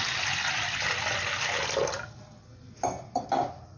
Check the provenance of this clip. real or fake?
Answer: real